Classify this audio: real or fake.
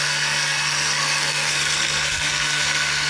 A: fake